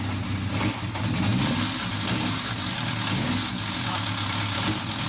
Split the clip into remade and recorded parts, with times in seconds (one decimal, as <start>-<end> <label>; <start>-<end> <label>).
0.0-5.1 recorded